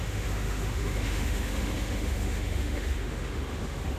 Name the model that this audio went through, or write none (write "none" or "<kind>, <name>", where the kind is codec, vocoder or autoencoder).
autoencoder, DAC-VAE